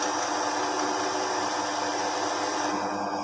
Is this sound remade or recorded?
recorded